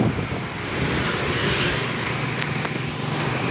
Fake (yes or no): no